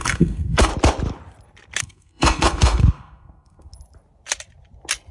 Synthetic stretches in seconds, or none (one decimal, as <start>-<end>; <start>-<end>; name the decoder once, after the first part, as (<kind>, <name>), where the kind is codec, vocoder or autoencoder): 0.0-0.7 (codec, SNAC); 1.8-3.7

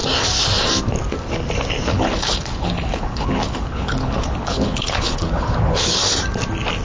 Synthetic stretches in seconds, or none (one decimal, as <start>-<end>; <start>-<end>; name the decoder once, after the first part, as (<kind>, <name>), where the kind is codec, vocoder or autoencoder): 1.9-6.0 (codec, HILCodec)

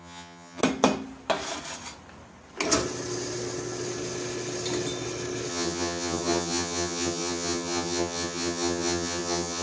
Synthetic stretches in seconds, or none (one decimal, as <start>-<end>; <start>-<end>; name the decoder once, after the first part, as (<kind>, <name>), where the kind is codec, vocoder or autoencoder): 0.0-0.6 (vocoder, HiFi-GAN); 5.5-9.6

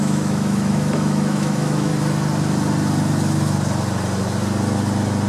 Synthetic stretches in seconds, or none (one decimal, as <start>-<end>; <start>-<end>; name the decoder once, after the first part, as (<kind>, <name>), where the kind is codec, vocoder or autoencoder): 0.0-1.9 (autoencoder, DAC-VAE)

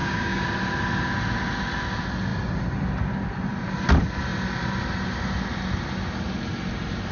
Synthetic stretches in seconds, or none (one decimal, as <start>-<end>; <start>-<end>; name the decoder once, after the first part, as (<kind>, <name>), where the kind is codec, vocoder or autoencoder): 0.0-0.5 (codec, DAC)